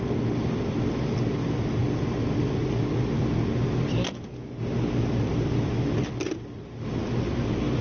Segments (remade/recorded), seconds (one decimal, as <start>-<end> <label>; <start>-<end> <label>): 0.0-7.8 recorded